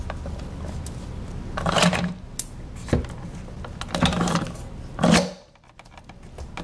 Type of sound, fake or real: real